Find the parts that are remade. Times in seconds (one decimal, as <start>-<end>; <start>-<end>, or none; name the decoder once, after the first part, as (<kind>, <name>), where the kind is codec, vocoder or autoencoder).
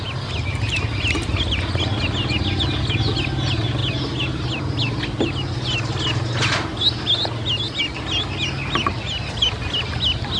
none